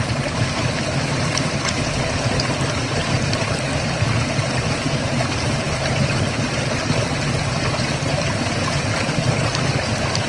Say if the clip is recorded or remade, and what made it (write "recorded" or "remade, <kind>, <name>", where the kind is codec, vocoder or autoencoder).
remade, vocoder, BigVGAN v2